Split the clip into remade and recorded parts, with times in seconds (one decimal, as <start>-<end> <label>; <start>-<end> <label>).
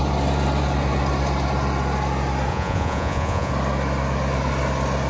0.0-2.5 recorded; 2.5-3.5 remade; 3.5-5.1 recorded